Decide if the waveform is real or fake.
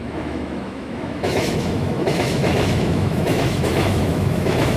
fake